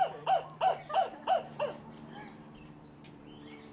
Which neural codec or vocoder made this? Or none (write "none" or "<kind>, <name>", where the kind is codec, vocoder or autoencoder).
vocoder, BigVGAN v2